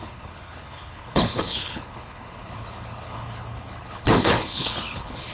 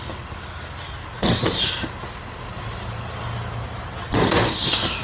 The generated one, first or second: first